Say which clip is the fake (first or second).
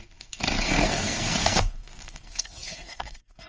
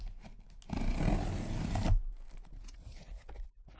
first